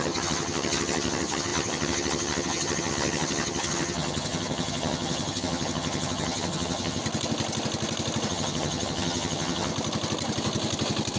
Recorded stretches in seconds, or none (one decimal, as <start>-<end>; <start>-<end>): 7.0-8.3; 9.7-11.2